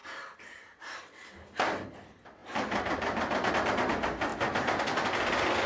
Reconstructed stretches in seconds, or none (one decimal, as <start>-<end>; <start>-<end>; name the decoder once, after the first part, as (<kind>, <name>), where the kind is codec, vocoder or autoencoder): 0.0-1.0 (vocoder, BigVGAN v2); 2.4-3.5